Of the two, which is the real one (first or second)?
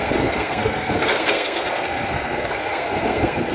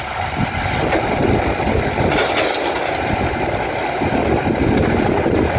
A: second